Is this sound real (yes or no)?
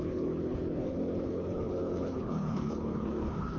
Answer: no